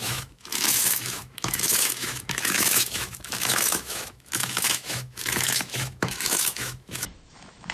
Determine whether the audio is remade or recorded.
remade